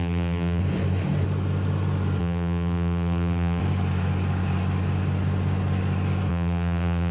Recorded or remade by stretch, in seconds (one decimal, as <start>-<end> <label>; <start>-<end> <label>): 0.0-0.6 remade; 0.6-2.2 recorded; 2.2-3.6 remade; 3.6-6.3 recorded; 6.3-7.1 remade